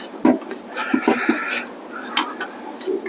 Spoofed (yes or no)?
no